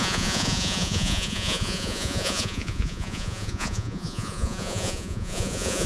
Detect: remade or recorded remade